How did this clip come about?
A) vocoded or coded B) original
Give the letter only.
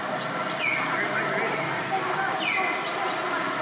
B